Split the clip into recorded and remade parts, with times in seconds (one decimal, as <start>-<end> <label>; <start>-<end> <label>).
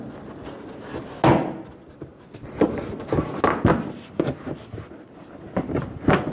0.0-6.3 recorded